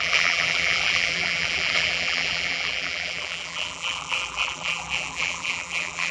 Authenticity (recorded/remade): remade